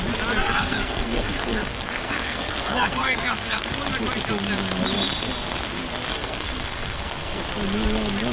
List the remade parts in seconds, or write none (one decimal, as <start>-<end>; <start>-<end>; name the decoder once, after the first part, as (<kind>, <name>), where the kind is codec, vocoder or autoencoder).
0.4-3.7 (codec, SNAC); 6.1-7.4